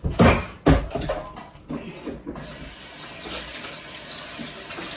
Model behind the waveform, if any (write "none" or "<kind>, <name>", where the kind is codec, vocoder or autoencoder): none